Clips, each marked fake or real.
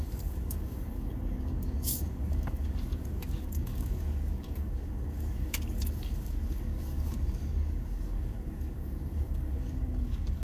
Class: fake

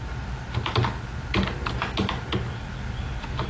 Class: real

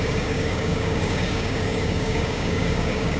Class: fake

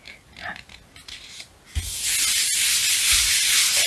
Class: real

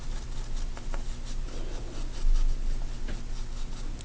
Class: real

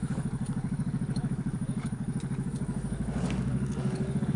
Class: fake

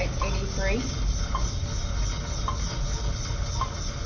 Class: real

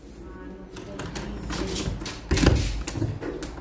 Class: real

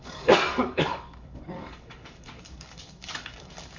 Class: fake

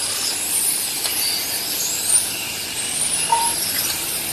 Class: real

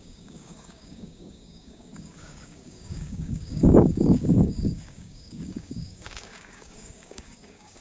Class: fake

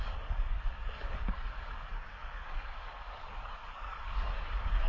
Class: fake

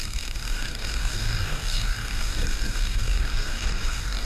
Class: fake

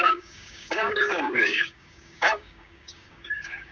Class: fake